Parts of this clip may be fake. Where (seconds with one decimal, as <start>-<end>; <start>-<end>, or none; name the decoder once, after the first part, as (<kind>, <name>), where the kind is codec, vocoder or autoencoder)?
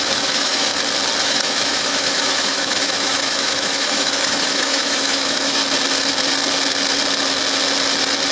0.0-0.7 (autoencoder, DAC-VAE); 1.2-5.6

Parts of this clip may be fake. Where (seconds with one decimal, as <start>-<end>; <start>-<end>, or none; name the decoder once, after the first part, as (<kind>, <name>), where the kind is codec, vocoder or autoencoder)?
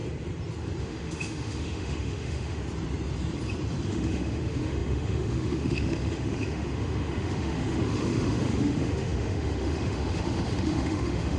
0.8-2.6 (autoencoder, DAC-VAE); 3.9-11.4